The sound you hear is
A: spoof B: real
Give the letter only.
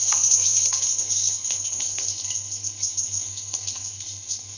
A